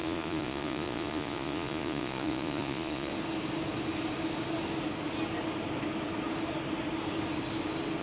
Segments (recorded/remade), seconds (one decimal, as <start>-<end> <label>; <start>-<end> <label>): 0.0-3.1 remade; 3.1-8.0 recorded